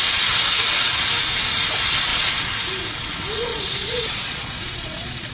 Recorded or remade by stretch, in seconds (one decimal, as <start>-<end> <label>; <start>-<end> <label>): 0.0-3.5 recorded; 3.5-5.3 remade